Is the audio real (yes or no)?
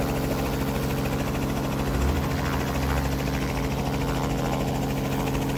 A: yes